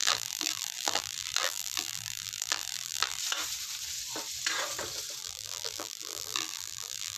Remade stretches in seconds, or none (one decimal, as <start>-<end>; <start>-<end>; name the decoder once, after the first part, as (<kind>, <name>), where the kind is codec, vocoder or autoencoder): 0.0-3.2 (vocoder, BigVGAN v2); 5.2-7.2